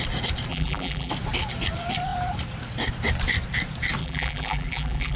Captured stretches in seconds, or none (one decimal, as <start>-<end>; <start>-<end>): 0.0-0.5; 1.1-4.0